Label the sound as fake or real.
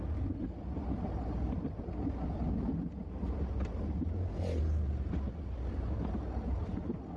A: real